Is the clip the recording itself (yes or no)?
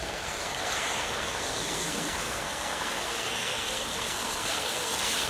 no